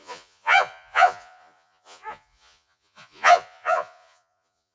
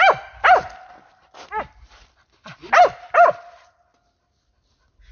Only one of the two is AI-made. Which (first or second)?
first